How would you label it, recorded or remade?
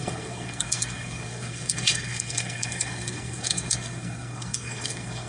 remade